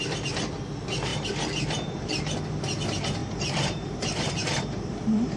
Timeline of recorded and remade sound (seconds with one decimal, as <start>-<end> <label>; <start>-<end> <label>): 0.0-1.1 recorded; 1.1-2.4 remade; 2.4-3.2 recorded; 3.2-5.4 remade